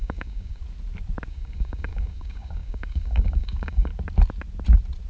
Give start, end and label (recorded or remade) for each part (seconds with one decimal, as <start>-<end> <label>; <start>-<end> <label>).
0.0-0.6 remade; 0.6-1.3 recorded; 1.3-3.9 remade; 3.9-5.1 recorded